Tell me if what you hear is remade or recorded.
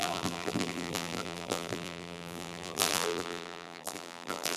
remade